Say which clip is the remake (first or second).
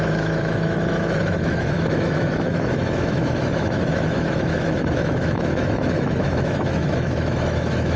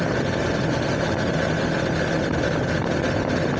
first